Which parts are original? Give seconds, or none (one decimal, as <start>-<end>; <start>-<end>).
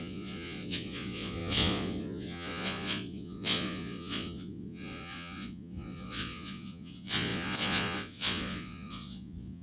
none